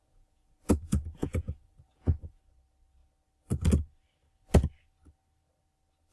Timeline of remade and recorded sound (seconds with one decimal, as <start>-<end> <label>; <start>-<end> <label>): 0.0-2.4 remade; 2.4-6.1 recorded